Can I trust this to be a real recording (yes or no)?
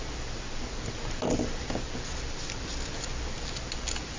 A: yes